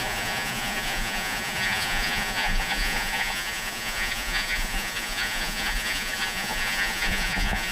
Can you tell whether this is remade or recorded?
remade